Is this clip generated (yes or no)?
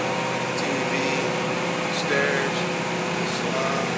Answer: no